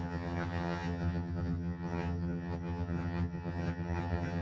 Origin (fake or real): fake